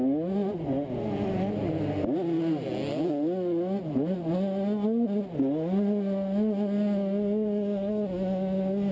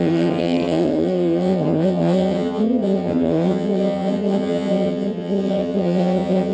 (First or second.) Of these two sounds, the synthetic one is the second